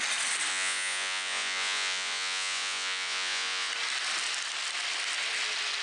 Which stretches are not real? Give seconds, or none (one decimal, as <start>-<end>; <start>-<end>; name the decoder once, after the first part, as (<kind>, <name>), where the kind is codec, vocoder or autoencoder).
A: 0.5-3.7 (vocoder, Vocos)